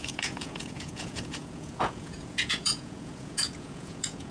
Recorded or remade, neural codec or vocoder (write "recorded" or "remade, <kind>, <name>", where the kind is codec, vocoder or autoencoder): remade, vocoder, Vocos